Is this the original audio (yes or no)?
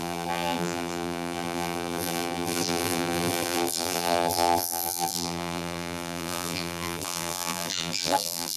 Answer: no